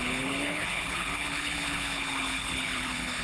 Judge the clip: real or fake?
fake